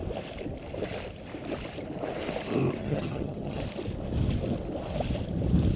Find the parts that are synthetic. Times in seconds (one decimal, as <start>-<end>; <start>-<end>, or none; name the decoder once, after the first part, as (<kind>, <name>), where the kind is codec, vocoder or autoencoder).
2.8-3.6 (vocoder, HiFi-GAN)